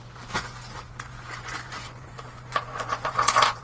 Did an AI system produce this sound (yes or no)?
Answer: yes